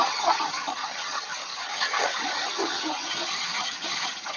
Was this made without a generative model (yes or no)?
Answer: no